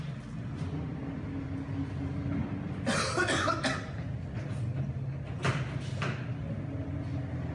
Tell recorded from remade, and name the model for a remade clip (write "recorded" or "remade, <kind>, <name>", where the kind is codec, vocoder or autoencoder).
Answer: recorded